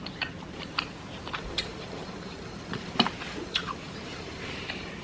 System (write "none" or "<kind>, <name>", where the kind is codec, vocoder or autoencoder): vocoder, BigVGAN v2